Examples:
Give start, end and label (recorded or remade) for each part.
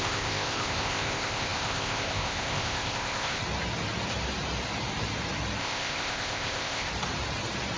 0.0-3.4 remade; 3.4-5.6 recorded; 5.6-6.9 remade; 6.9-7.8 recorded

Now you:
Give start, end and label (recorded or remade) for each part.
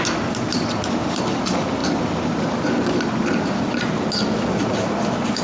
0.0-5.4 recorded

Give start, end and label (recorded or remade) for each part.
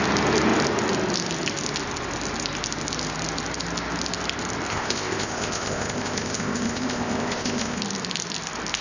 0.0-4.7 recorded; 4.7-7.8 remade; 7.8-8.8 recorded